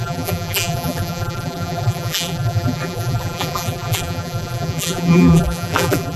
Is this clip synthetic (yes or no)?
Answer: yes